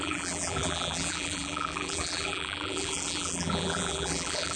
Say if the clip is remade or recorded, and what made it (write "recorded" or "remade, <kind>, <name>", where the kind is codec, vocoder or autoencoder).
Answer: remade, vocoder, BigVGAN v2